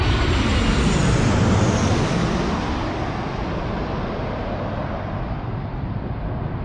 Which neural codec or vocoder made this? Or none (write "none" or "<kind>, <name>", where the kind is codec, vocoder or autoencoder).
none